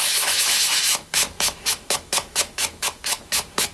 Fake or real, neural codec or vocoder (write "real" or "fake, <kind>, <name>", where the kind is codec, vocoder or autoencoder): fake, autoencoder, DAC-VAE